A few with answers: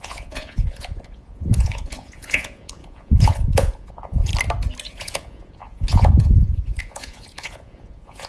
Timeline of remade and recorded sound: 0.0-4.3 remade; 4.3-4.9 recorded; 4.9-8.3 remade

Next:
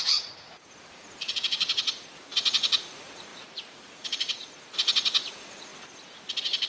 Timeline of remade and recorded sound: 0.0-5.7 remade; 5.7-6.7 recorded

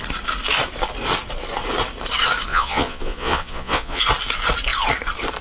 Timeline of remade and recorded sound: 0.0-2.5 recorded; 2.5-4.0 remade; 4.0-5.4 recorded

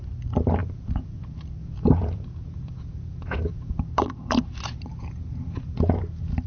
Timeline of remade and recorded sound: 0.0-0.6 recorded; 0.6-1.2 remade; 1.2-1.6 recorded; 1.6-3.7 remade; 3.7-4.9 recorded; 4.9-6.0 remade; 6.0-6.5 recorded

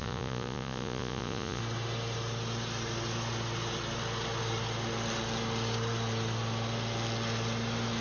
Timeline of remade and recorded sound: 0.0-1.6 remade; 1.6-8.0 recorded